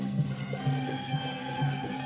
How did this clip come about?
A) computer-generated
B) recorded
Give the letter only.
A